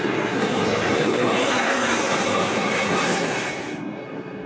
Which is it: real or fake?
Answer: fake